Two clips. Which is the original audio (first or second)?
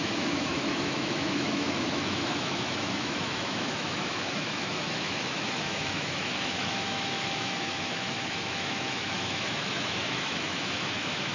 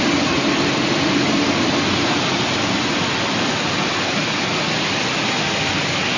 second